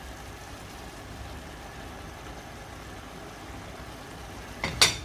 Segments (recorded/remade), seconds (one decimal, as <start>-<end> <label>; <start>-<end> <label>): 0.0-0.4 recorded; 0.4-1.0 remade; 1.0-5.0 recorded